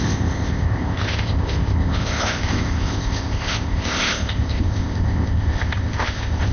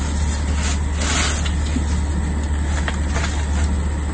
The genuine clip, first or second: second